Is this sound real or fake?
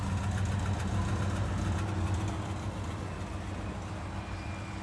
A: real